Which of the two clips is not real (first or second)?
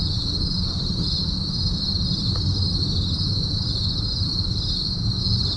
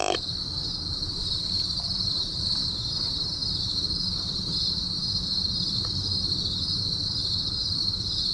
second